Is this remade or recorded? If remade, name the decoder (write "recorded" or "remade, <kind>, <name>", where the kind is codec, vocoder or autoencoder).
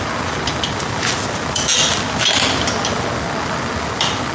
recorded